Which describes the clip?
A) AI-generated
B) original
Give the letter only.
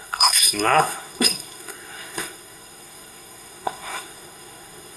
A